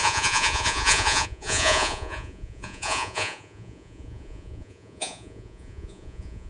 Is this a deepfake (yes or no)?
yes